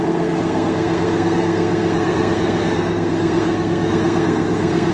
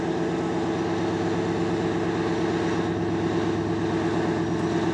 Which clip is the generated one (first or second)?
first